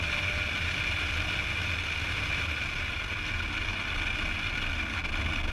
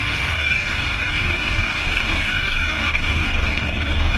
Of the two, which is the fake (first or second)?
second